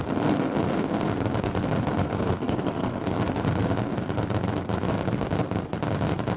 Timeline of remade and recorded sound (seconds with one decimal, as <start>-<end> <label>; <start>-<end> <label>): 0.0-2.0 recorded; 2.0-3.0 remade; 3.0-6.4 recorded